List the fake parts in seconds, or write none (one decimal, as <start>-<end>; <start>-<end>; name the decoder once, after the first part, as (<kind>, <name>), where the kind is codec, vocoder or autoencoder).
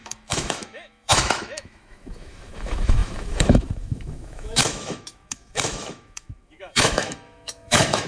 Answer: 0.0-8.1 (autoencoder, DAC-VAE)